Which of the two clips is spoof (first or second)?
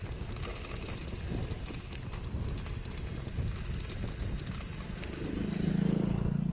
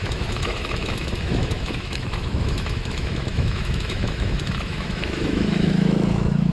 second